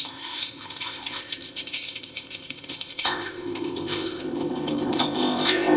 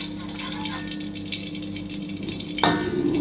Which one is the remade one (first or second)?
first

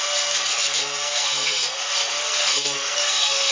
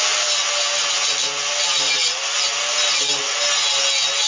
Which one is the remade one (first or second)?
first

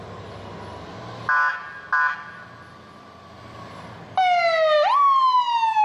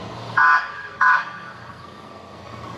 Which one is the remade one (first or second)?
second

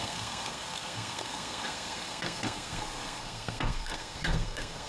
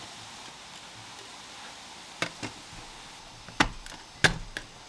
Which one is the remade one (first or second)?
first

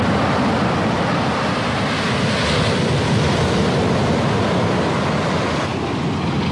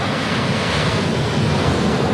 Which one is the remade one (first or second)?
second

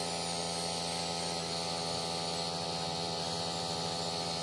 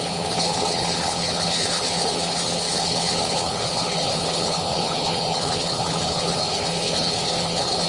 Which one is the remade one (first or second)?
second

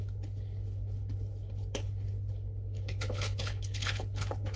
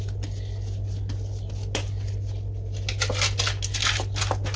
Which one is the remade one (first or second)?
first